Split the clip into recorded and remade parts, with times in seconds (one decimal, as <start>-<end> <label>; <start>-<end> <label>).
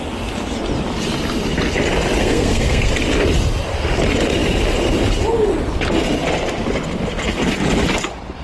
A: 0.0-2.2 recorded; 2.2-2.9 remade; 2.9-8.4 recorded